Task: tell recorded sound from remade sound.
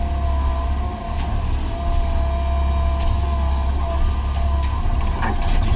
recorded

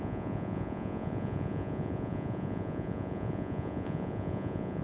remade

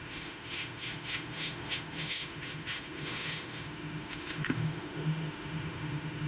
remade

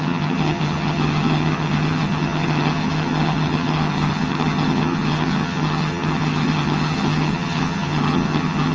remade